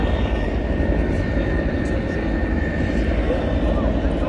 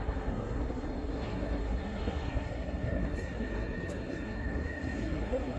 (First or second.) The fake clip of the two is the second